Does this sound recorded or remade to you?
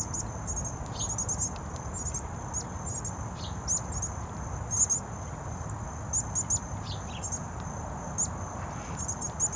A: recorded